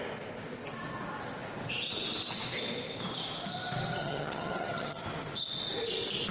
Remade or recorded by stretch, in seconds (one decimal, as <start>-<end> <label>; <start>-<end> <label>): 0.0-4.0 recorded; 4.0-5.0 remade; 5.0-6.3 recorded